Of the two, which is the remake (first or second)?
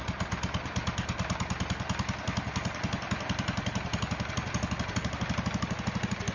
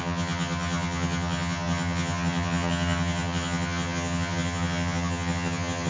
second